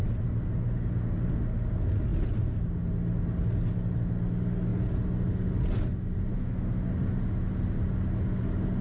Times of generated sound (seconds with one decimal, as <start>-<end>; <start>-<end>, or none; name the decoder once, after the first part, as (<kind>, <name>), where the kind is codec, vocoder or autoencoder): 6.3-6.9 (codec, SNAC)